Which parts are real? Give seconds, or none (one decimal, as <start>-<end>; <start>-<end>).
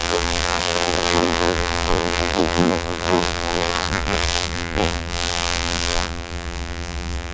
none